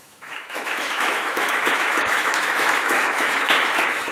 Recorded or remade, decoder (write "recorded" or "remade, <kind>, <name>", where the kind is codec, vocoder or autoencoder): remade, autoencoder, DAC-VAE